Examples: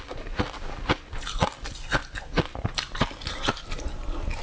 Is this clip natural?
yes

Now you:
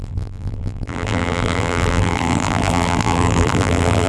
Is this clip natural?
no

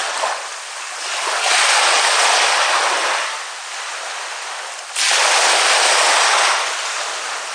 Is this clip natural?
yes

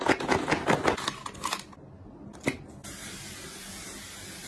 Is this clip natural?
yes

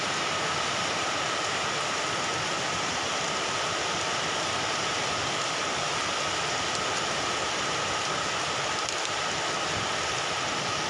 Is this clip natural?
yes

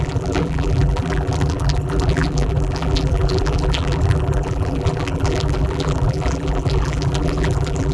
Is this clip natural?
no